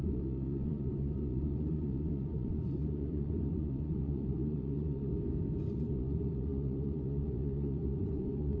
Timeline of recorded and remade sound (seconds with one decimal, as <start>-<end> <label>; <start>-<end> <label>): 0.0-5.1 remade; 5.1-5.7 recorded; 5.7-8.6 remade